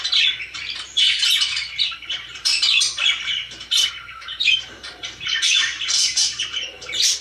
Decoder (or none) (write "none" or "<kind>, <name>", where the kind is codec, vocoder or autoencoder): vocoder, BigVGAN v2